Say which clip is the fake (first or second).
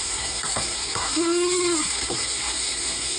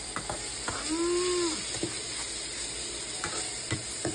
first